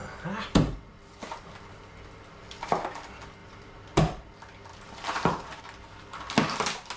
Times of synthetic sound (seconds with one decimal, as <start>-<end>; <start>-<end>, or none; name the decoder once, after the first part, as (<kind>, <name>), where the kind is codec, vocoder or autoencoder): 3.4-4.3 (vocoder, BigVGAN v2); 4.7-5.6